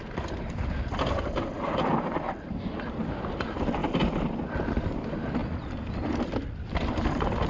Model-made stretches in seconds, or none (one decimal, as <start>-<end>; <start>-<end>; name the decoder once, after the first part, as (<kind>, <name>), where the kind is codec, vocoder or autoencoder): none